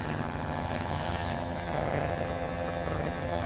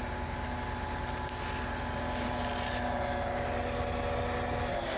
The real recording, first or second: second